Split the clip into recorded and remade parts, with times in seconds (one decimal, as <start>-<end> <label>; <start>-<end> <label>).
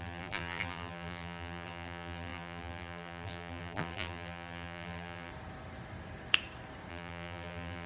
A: 0.0-5.3 remade; 5.3-6.9 recorded; 6.9-7.9 remade